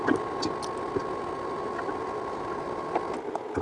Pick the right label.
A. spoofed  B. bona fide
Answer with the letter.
B